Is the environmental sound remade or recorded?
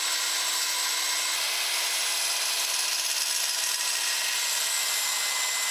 recorded